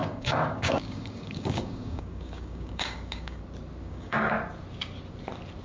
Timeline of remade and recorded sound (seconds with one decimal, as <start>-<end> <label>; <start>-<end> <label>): 0.0-3.4 remade; 3.4-3.8 recorded; 3.8-4.3 remade; 4.3-5.6 recorded